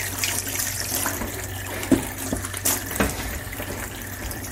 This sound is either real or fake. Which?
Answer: fake